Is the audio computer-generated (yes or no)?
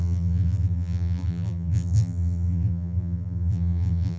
yes